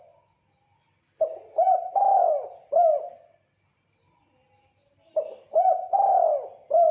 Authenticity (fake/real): real